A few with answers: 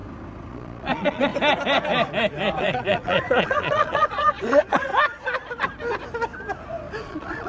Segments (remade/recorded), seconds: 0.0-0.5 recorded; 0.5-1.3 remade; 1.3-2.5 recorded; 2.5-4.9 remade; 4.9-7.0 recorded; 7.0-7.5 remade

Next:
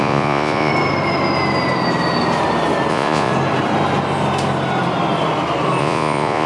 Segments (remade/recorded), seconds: 0.0-0.7 remade; 0.7-2.9 recorded; 2.9-3.3 remade; 3.3-5.8 recorded; 5.8-6.5 remade

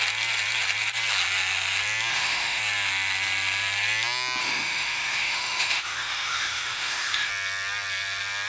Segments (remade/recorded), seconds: 0.0-2.1 recorded; 2.1-2.6 remade; 2.6-4.4 recorded; 4.4-7.3 remade; 7.3-8.5 recorded

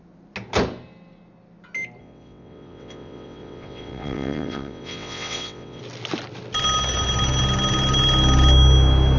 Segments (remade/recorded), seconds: 0.0-2.0 recorded; 2.0-5.8 remade; 5.8-9.2 recorded

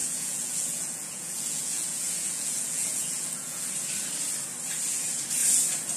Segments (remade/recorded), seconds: 0.0-3.6 remade; 3.6-6.0 recorded